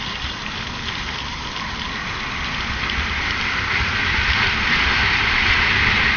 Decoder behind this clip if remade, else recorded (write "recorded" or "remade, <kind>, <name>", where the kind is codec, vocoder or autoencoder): recorded